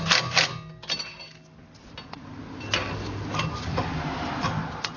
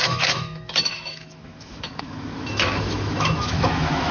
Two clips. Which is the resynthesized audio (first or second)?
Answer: second